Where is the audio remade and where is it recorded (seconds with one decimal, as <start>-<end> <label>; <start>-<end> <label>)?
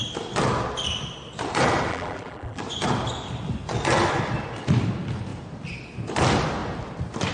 0.0-1.9 recorded; 1.9-2.6 remade; 2.6-7.3 recorded